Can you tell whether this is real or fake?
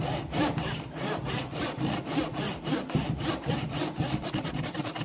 real